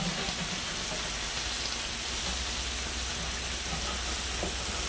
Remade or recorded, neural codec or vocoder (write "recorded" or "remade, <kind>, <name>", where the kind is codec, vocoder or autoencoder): recorded